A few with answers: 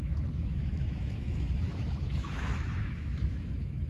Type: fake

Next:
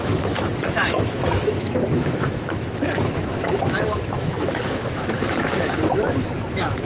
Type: fake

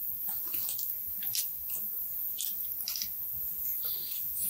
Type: real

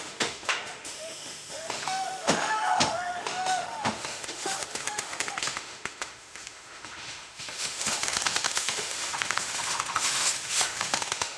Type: fake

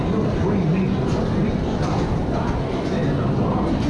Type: real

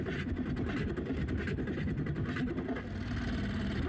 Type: real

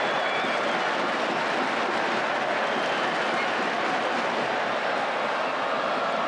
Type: real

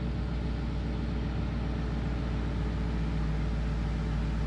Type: real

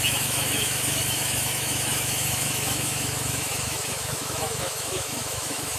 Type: fake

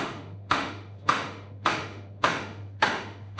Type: fake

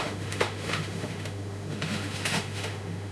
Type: fake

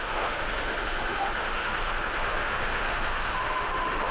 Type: fake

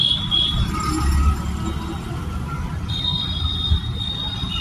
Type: real